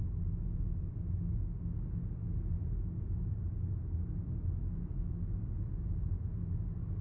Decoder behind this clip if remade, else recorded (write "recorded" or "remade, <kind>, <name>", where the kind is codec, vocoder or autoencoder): recorded